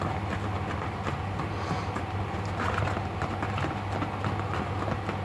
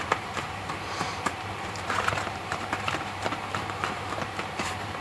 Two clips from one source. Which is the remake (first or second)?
second